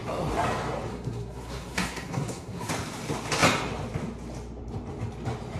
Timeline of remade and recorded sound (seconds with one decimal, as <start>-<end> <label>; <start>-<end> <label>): 0.0-0.9 recorded; 0.9-2.7 remade; 2.7-5.6 recorded